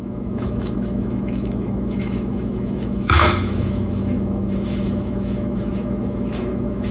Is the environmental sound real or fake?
fake